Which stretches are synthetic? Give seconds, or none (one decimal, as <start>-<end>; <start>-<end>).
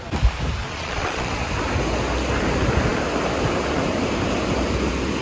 0.6-1.3